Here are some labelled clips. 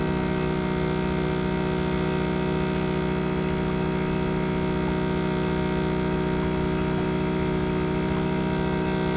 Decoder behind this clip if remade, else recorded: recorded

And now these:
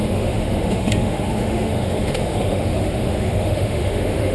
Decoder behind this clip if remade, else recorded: remade, autoencoder, DAC-VAE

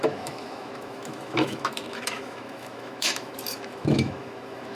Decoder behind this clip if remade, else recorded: remade, autoencoder, DAC-VAE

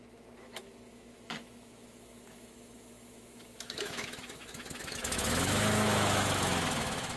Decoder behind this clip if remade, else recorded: remade, autoencoder, DAC-VAE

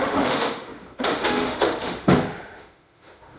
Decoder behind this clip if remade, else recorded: remade, autoencoder, DAC-VAE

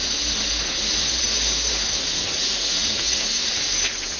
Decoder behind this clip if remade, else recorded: recorded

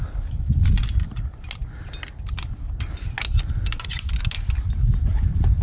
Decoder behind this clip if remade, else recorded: recorded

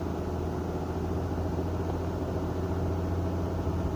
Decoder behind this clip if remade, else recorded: recorded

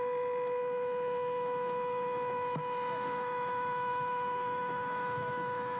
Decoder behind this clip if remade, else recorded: remade, autoencoder, DAC-VAE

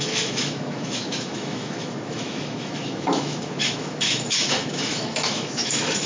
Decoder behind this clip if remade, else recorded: remade, autoencoder, DAC-VAE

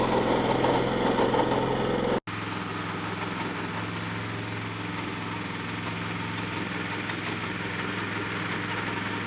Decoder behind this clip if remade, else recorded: recorded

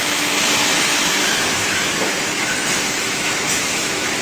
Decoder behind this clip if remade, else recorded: remade, autoencoder, DAC-VAE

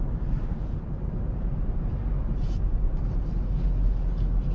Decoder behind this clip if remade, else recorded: recorded